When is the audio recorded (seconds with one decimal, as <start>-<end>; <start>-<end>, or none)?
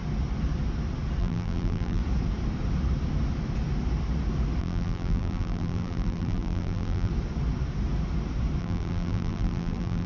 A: 0.0-1.2; 2.0-4.6; 7.1-8.6